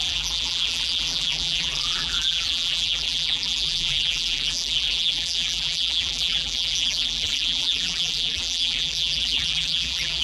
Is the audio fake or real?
fake